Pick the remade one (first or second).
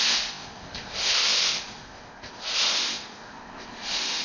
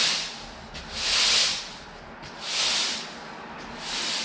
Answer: first